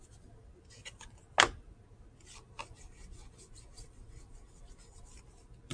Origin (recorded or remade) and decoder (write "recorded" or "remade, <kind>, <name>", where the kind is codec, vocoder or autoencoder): recorded